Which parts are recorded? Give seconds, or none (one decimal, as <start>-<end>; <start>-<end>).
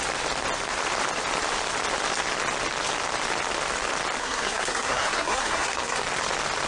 0.0-4.2; 6.0-6.7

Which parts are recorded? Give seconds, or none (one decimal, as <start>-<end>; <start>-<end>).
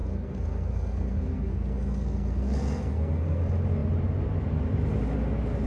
3.4-5.7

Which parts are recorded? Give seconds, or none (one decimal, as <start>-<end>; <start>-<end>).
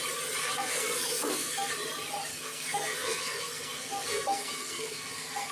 0.0-0.4; 1.7-2.3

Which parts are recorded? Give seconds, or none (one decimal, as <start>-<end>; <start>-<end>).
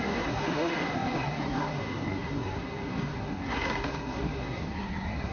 none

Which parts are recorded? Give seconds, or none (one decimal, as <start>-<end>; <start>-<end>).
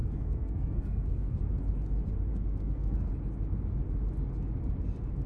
1.4-2.3; 3.1-5.3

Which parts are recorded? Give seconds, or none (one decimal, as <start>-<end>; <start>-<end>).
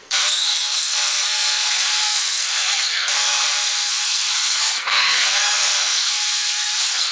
none